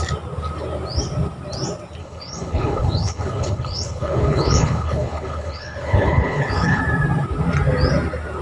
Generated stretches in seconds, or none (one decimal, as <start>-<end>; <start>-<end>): 2.0-6.8